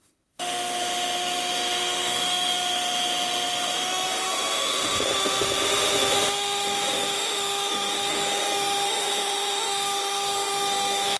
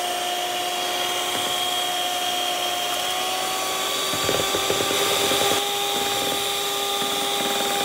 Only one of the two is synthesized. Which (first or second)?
first